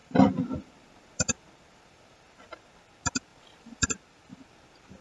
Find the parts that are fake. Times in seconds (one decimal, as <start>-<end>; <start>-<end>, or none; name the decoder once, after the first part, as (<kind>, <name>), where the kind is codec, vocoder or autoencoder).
0.0-2.8 (vocoder, BigVGAN v2); 3.3-3.9